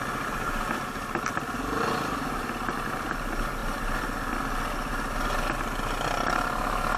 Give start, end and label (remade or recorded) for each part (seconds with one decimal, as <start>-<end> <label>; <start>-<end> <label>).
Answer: 0.0-3.6 recorded; 3.6-4.4 remade; 4.4-7.0 recorded